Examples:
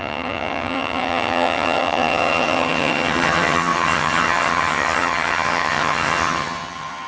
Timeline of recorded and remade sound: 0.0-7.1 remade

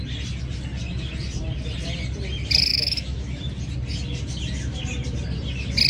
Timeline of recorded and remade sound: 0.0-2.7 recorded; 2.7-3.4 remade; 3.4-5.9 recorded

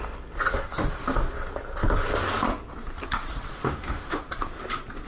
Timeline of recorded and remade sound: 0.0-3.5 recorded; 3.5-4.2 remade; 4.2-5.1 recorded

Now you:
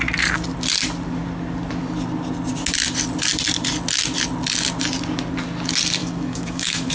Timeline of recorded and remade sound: 0.0-6.0 recorded; 6.0-6.9 remade

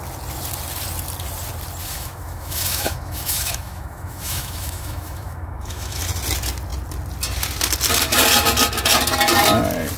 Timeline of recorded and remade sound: 0.0-1.8 recorded; 1.8-6.0 remade; 6.0-10.0 recorded

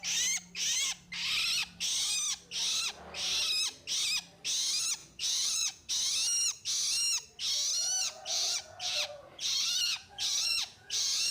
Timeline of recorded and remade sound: 0.0-5.0 recorded; 5.0-5.9 remade; 5.9-8.0 recorded; 8.0-11.3 remade

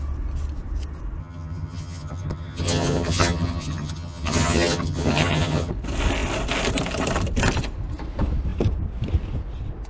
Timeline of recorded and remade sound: 0.0-1.2 recorded; 1.2-5.7 remade; 5.7-9.9 recorded